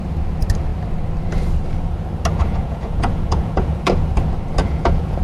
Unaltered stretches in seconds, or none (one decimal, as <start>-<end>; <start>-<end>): 0.0-2.3; 4.1-4.6